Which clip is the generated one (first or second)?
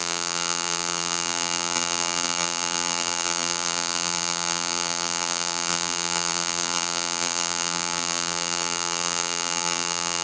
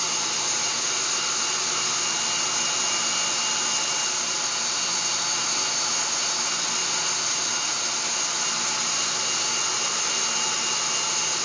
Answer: first